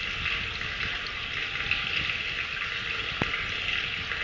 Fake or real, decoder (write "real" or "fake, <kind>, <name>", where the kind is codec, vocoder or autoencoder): real